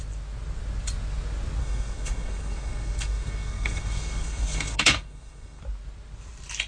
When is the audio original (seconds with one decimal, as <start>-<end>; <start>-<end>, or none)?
0.0-1.6; 5.6-6.7